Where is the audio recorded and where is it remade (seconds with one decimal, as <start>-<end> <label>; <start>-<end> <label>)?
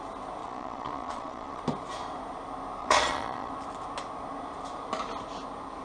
0.0-0.4 recorded; 0.4-1.6 remade; 1.6-2.8 recorded; 2.8-3.5 remade; 3.5-5.8 recorded